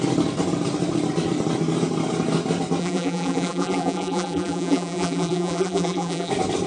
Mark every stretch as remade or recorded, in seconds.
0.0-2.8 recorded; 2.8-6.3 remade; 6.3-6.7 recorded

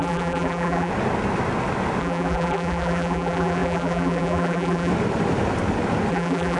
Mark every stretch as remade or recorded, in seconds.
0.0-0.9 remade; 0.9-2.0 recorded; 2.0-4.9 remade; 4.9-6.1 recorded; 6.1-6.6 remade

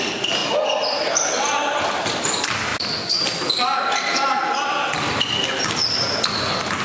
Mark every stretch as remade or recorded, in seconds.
0.0-6.8 recorded

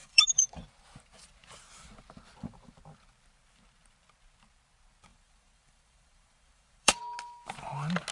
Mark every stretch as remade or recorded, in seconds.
0.0-0.6 remade; 0.6-5.1 recorded; 5.1-7.0 remade; 7.0-8.1 recorded

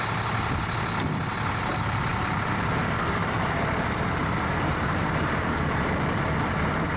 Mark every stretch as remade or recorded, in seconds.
0.0-4.2 recorded; 4.2-6.2 remade; 6.2-7.0 recorded

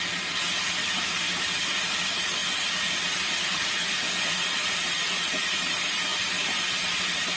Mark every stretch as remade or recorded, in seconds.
0.0-7.4 recorded